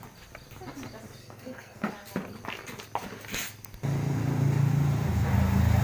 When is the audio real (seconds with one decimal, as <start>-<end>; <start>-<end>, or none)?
0.0-1.2; 1.9-5.8